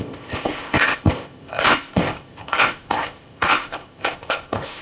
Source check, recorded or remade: remade